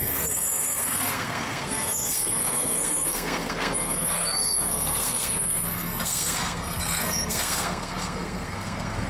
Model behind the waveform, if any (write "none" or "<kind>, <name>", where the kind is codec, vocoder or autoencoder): codec, SNAC